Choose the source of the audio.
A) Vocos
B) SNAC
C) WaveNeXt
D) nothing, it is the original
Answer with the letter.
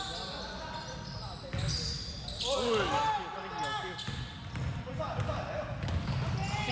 D